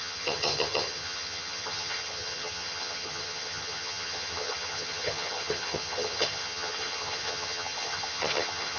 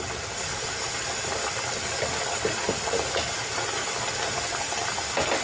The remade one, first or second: first